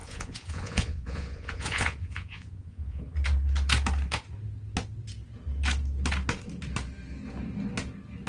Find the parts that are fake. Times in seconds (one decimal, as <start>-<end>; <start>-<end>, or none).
0.0-3.0

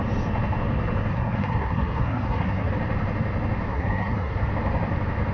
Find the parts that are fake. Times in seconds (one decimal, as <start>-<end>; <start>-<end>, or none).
1.1-2.7; 3.7-4.5

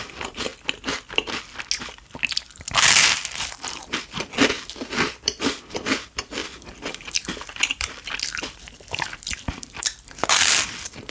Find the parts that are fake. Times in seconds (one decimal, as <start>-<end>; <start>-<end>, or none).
0.0-0.5; 3.0-11.1

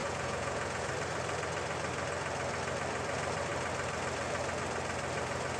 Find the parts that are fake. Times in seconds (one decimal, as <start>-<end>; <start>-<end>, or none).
0.0-0.9

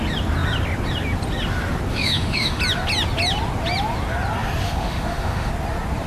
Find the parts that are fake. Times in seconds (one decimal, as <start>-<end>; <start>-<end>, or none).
1.9-2.6; 4.6-5.5

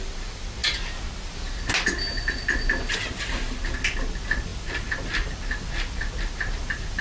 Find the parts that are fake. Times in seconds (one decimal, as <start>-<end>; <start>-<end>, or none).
none